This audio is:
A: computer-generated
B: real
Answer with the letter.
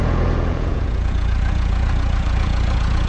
A